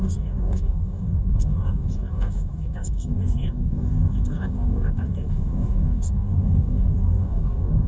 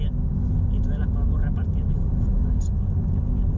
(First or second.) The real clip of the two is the second